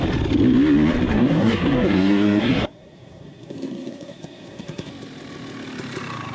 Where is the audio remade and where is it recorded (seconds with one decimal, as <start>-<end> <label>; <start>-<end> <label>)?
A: 0.0-1.1 recorded; 1.1-4.9 remade; 4.9-6.3 recorded